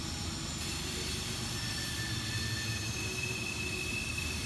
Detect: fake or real real